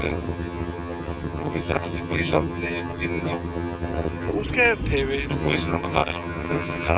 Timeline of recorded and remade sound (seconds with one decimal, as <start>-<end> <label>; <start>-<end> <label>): 0.0-4.3 remade; 4.3-5.3 recorded; 5.3-7.0 remade